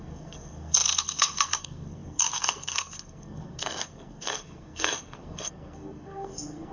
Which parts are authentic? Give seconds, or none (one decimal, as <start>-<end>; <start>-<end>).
none